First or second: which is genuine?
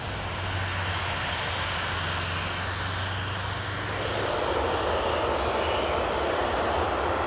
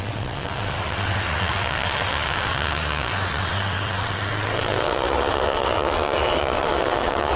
first